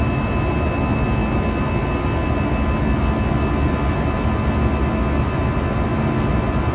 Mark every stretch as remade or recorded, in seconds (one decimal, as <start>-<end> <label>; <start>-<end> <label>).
0.0-6.7 recorded